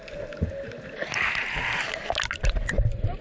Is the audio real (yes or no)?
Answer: yes